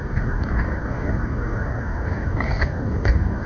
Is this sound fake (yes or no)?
yes